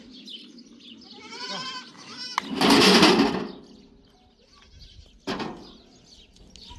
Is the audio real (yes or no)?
yes